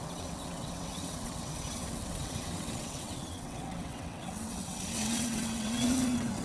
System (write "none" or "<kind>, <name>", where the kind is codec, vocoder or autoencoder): vocoder, WaveNeXt